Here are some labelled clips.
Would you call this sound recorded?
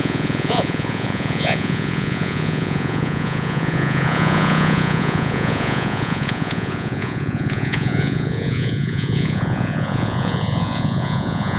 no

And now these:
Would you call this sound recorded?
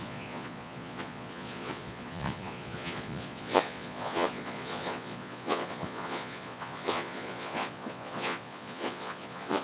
no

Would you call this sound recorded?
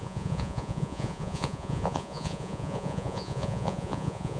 no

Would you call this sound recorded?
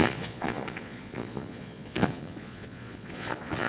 no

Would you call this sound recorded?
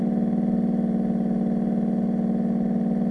yes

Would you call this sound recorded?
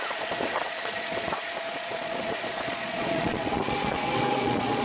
no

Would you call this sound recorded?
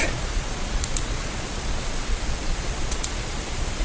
no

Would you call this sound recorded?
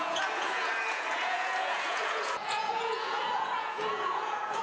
no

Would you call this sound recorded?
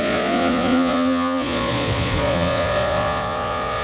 no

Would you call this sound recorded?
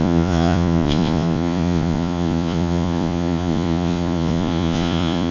no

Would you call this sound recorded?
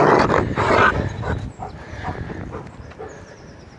yes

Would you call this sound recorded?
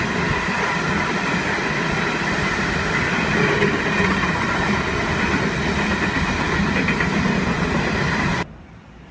yes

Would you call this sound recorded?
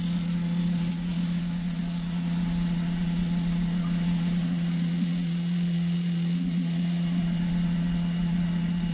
no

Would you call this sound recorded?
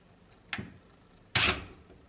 yes